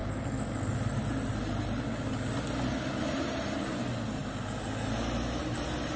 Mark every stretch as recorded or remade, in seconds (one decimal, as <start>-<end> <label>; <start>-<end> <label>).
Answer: 0.0-6.0 recorded